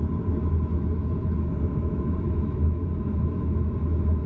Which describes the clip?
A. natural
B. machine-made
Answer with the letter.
B